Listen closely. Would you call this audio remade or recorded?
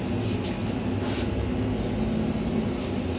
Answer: recorded